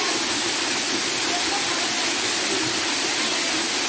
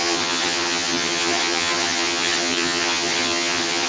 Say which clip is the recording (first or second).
first